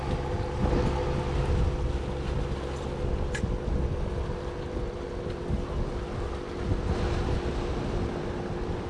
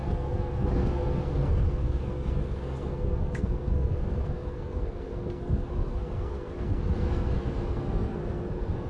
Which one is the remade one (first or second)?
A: second